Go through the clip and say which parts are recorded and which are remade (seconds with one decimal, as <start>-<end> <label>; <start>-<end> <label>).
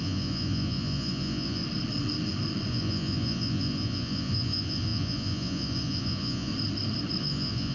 0.0-1.6 remade; 1.6-2.7 recorded; 2.7-6.5 remade; 6.5-7.2 recorded; 7.2-7.7 remade